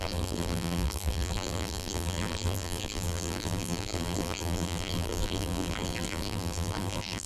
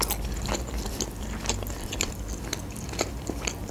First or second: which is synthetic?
first